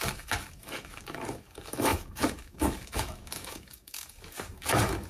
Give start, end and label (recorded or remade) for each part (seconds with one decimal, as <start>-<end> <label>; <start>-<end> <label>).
0.0-5.1 remade